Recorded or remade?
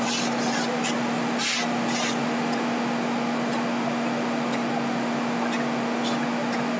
recorded